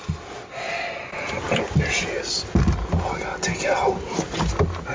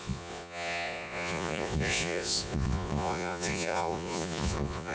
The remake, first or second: second